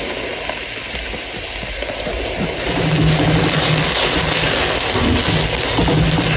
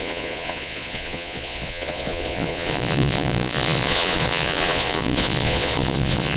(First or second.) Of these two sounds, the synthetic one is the second